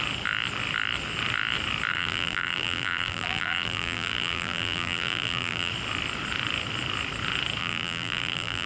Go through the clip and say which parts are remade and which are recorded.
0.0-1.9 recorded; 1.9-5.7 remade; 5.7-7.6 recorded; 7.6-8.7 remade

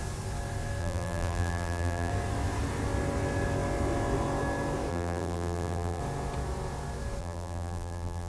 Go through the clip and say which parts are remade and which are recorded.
0.0-0.8 recorded; 0.8-2.1 remade; 2.1-4.9 recorded; 4.9-6.0 remade; 6.0-7.2 recorded; 7.2-8.3 remade

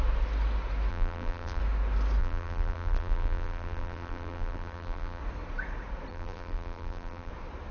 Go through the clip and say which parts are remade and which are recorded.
0.0-0.9 recorded; 0.9-1.6 remade; 1.6-2.2 recorded; 2.2-5.2 remade; 5.2-6.1 recorded; 6.1-7.3 remade; 7.3-7.7 recorded

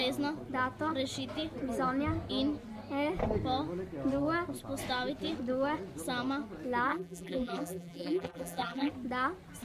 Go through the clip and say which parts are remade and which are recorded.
0.0-6.9 recorded; 6.9-8.9 remade; 8.9-9.6 recorded